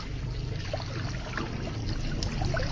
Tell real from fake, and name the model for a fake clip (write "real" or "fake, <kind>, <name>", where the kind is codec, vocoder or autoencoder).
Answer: real